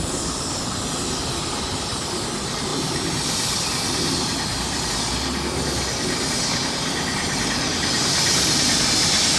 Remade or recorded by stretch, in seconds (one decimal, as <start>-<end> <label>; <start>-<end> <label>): 0.0-9.4 recorded